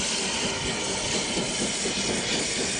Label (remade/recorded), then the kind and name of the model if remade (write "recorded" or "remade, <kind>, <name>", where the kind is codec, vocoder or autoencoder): recorded